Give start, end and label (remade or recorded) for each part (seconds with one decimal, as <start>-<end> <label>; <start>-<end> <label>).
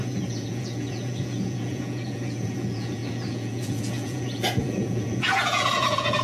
0.0-6.2 remade